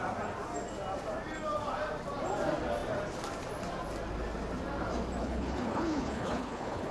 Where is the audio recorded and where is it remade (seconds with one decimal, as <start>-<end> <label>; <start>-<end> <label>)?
0.0-5.2 recorded; 5.2-6.9 remade